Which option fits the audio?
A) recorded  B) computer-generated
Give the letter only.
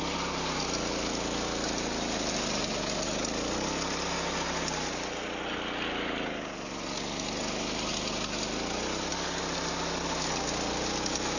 A